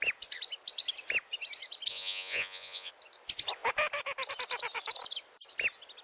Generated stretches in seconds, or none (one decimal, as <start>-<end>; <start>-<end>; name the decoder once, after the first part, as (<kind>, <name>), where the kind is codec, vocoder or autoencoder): 1.9-2.9 (vocoder, Vocos)